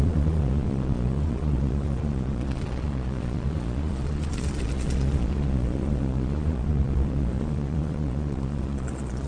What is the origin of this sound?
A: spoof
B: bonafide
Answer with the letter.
A